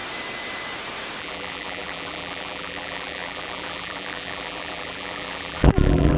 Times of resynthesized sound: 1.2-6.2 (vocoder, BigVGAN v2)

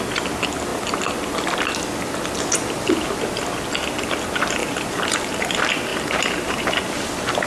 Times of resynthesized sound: 4.6-5.3 (vocoder, BigVGAN v2); 5.9-6.8

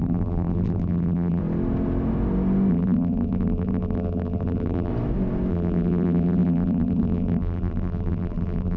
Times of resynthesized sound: 0.0-1.4 (vocoder, BigVGAN v2); 2.7-4.9; 5.5-8.8